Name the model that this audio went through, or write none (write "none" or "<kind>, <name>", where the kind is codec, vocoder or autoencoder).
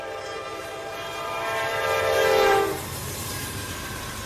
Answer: vocoder, BigVGAN v2